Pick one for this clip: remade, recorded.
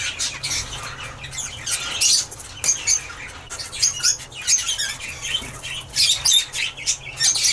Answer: recorded